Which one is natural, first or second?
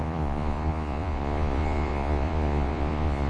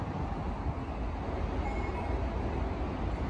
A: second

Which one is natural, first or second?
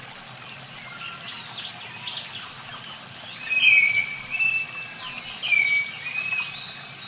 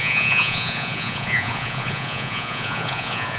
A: first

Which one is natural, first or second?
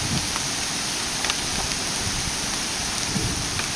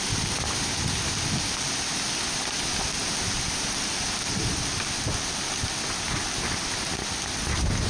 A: second